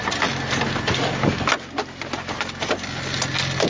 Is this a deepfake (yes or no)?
no